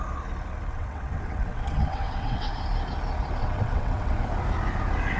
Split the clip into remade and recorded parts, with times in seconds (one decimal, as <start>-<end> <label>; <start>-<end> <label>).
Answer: 0.0-0.7 recorded; 0.7-2.5 remade; 2.5-3.4 recorded; 3.4-4.2 remade; 4.2-5.2 recorded